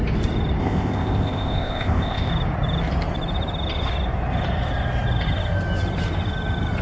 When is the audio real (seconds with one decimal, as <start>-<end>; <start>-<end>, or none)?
0.0-0.6; 2.3-6.8